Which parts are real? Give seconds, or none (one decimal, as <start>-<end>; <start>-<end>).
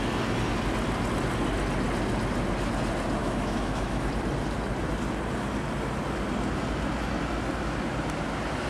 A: 0.0-3.2; 4.1-8.7